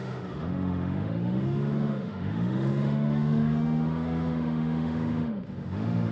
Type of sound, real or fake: fake